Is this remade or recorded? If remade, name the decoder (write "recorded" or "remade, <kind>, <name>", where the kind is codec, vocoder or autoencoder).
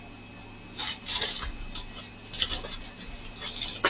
recorded